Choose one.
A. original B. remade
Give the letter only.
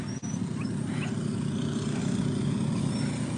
A